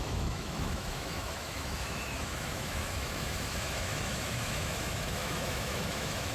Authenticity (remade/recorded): remade